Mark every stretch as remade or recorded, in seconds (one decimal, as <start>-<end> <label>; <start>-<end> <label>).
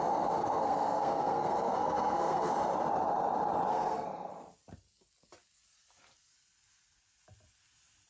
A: 0.0-0.4 recorded; 0.4-2.5 remade; 2.5-3.7 recorded; 3.7-4.3 remade; 4.3-8.1 recorded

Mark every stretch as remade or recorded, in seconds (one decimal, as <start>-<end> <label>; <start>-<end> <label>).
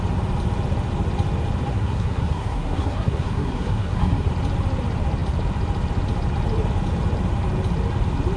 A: 0.0-1.7 recorded; 1.7-4.3 remade; 4.3-8.4 recorded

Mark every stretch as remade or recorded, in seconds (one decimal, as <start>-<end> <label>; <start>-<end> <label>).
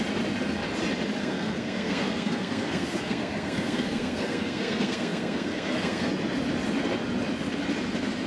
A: 0.0-1.2 recorded; 1.2-6.1 remade; 6.1-8.3 recorded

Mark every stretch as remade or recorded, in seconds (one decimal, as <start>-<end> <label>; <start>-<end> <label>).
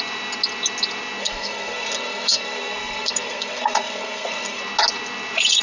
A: 0.0-1.2 recorded; 1.2-4.6 remade; 4.6-5.6 recorded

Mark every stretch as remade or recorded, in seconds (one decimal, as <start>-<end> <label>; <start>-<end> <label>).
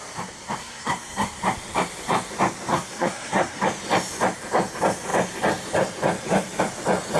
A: 0.0-0.6 recorded; 0.6-1.4 remade; 1.4-2.7 recorded; 2.7-3.6 remade; 3.6-7.2 recorded